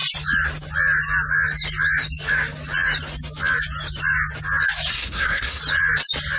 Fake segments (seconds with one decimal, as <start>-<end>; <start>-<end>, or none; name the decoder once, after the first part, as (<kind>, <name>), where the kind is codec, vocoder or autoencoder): 4.9-5.6 (codec, SNAC)